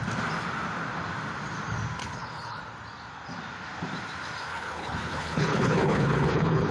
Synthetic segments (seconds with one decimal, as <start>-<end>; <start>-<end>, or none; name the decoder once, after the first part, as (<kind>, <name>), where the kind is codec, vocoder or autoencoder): 2.0-2.6 (codec, HILCodec); 4.5-6.7